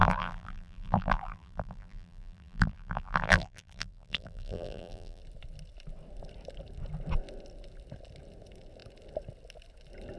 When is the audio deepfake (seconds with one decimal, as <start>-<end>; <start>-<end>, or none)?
0.0-5.2

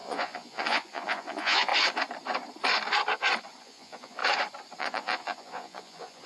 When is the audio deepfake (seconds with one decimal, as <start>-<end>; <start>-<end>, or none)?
0.0-1.7; 3.6-4.2; 4.8-6.3

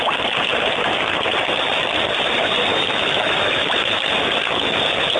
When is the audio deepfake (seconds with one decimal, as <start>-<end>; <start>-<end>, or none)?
2.7-4.1

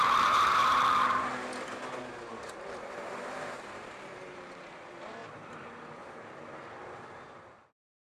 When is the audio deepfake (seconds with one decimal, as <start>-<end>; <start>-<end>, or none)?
0.0-1.3; 2.4-8.2